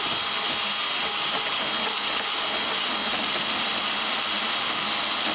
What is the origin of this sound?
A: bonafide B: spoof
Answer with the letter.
A